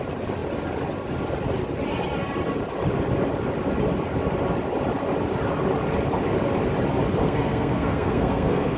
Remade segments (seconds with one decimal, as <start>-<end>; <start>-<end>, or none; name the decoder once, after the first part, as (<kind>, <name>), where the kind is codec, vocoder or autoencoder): 7.2-8.8 (codec, SNAC)